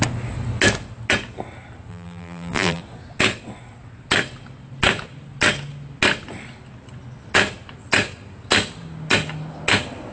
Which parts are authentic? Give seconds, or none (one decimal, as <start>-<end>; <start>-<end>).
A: 0.0-1.9; 2.8-10.1